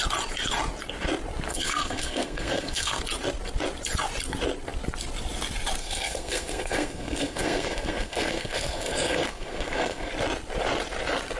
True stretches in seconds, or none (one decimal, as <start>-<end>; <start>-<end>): 0.0-1.5; 3.0-5.8; 10.1-11.4

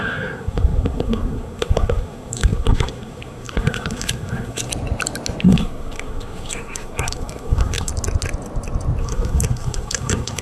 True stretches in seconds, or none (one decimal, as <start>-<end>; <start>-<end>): 4.7-5.4; 7.9-9.0

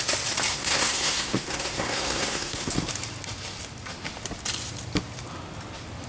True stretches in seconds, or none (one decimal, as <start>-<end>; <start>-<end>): 0.0-0.5; 2.7-6.1

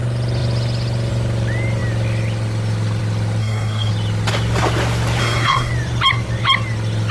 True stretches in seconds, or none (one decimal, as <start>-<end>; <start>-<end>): 0.0-3.4; 3.9-5.2; 5.7-7.1

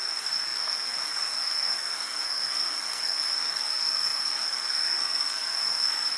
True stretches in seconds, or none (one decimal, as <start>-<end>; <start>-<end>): none

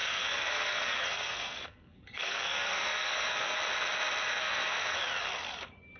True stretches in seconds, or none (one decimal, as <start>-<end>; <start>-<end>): 3.6-4.3; 5.0-6.0

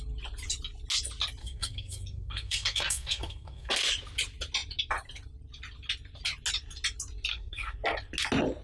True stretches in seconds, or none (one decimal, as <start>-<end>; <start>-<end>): 0.0-1.4; 3.7-7.3; 7.8-8.6

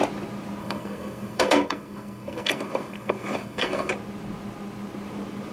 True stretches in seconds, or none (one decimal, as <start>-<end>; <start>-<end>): 0.0-0.6; 3.9-5.5